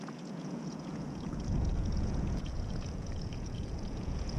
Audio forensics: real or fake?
fake